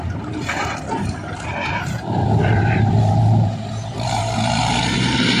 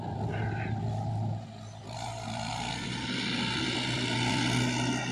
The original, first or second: second